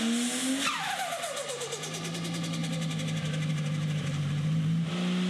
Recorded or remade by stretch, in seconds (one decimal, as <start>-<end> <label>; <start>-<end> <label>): 0.0-5.3 recorded